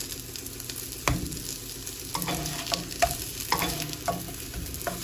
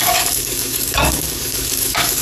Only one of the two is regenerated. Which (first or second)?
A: second